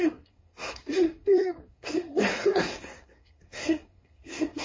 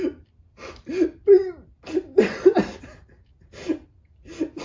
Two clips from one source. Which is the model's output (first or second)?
first